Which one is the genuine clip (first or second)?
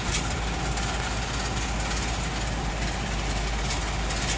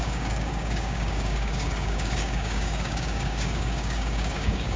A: first